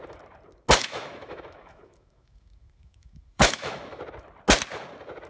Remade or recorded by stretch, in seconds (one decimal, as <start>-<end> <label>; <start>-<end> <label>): 0.0-0.8 recorded; 0.8-4.0 remade; 4.0-5.3 recorded